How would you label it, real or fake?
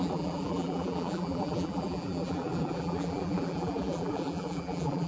fake